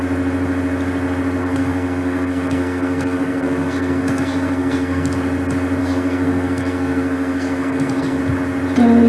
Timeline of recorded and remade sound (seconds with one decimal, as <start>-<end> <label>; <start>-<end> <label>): 0.0-1.4 recorded; 1.4-5.1 remade; 5.1-5.8 recorded; 5.8-8.2 remade; 8.2-9.1 recorded